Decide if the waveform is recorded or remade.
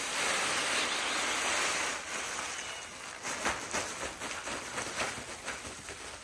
recorded